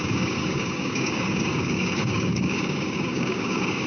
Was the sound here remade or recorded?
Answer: remade